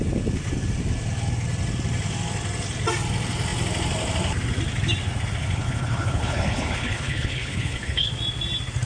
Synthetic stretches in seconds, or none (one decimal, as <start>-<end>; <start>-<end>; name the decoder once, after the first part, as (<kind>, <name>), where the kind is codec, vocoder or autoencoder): 5.4-8.1 (codec, HILCodec)